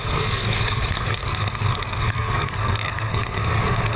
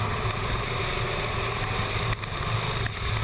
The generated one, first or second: first